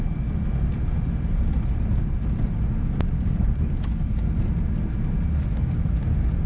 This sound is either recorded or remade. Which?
recorded